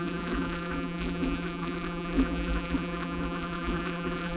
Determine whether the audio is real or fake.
fake